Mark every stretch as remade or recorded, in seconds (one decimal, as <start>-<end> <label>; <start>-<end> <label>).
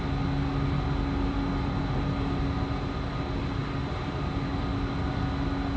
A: 0.0-5.8 recorded